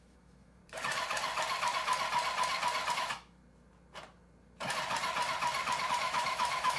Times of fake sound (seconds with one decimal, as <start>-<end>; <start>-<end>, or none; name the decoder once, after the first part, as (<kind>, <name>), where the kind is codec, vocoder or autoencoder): 0.0-0.6 (autoencoder, DAC-VAE); 2.9-3.4; 5.9-6.8